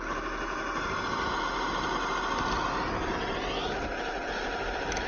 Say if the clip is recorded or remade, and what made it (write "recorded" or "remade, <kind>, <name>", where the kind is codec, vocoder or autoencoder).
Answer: recorded